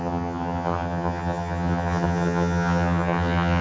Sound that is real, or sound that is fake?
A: fake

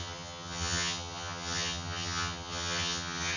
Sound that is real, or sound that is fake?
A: fake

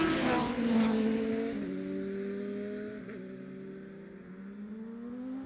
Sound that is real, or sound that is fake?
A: real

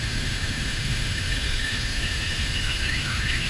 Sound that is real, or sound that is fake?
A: fake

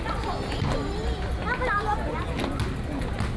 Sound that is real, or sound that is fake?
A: real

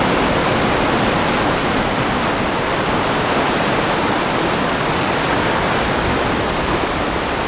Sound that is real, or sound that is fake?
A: real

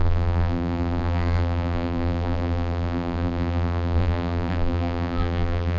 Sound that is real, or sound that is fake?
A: fake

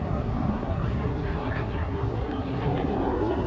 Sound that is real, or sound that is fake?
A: fake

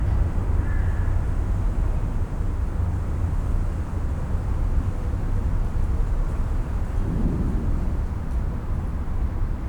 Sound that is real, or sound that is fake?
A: real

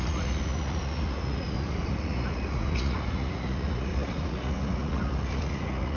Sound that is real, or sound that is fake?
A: fake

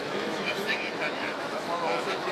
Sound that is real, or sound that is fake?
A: fake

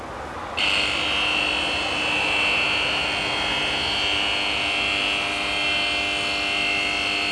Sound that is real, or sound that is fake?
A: real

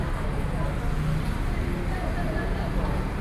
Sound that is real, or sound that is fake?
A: real